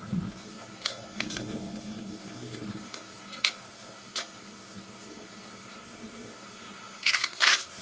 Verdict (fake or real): fake